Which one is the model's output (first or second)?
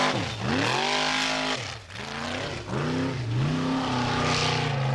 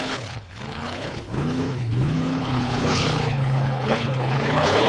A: second